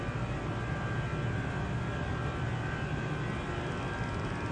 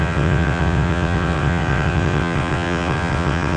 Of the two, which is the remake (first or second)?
second